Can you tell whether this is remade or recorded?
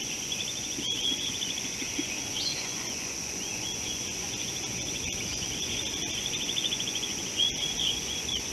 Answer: remade